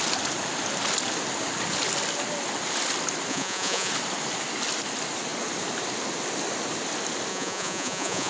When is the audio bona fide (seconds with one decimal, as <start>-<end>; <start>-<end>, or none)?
0.0-3.3; 3.9-7.3

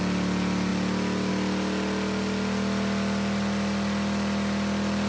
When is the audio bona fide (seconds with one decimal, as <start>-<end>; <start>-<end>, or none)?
0.0-5.1

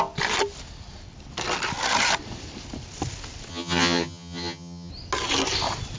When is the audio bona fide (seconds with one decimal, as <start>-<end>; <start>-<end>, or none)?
0.0-3.5; 4.9-6.0

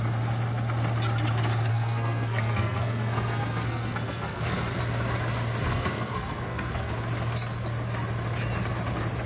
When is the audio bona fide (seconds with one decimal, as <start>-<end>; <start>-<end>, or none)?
0.0-1.7; 4.8-5.7; 6.9-9.3

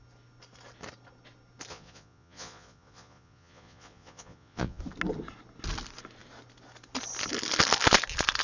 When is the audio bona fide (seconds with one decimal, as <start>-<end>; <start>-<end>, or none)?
0.0-1.7; 4.8-8.4

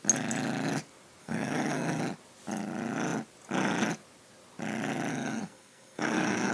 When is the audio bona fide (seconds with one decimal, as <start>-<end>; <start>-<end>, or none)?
0.0-1.2; 2.0-5.1

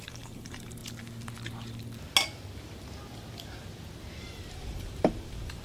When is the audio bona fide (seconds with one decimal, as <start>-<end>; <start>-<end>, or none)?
0.8-4.2

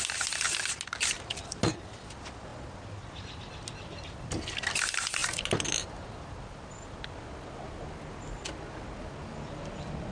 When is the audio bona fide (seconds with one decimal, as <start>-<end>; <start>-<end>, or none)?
0.0-10.1